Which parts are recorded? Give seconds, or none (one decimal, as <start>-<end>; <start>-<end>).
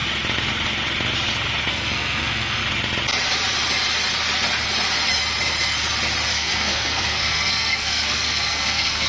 0.0-1.7; 2.6-6.3